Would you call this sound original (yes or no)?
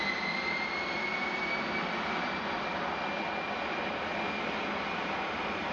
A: yes